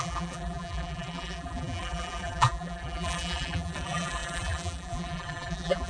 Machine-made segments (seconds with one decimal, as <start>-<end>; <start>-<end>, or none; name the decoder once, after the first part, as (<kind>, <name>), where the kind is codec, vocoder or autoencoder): 0.0-5.9 (vocoder, BigVGAN v2)